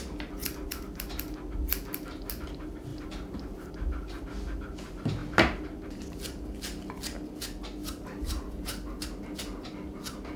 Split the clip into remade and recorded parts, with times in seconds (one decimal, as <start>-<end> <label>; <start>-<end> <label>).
0.0-2.9 recorded; 2.9-3.7 remade; 3.7-7.8 recorded; 7.8-9.0 remade; 9.0-10.4 recorded